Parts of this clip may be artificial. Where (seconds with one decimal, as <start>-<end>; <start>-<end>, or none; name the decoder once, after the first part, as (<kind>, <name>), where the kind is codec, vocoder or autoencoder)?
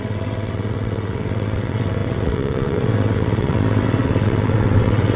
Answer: 0.0-5.2 (vocoder, WaveNeXt)